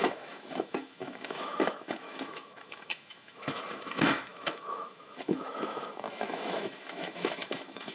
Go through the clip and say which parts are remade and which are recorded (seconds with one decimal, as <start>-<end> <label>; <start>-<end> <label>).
0.0-7.9 remade